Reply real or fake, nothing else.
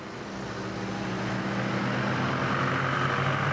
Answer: real